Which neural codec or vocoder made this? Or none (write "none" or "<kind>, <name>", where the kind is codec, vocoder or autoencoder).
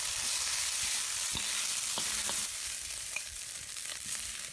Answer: vocoder, BigVGAN v2